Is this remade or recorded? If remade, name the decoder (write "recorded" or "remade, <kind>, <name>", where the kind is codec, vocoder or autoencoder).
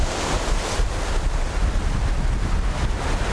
recorded